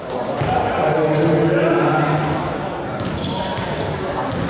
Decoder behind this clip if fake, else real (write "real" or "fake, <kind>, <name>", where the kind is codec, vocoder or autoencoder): real